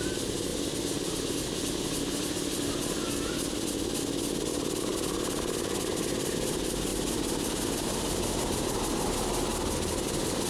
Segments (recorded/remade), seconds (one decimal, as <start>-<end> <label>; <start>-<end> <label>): 0.0-0.5 remade; 0.5-4.5 recorded; 4.5-10.5 remade